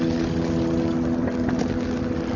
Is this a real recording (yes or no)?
yes